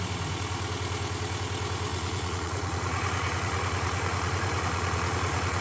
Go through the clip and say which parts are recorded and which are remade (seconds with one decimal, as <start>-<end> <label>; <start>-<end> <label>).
0.0-1.9 recorded; 1.9-5.6 remade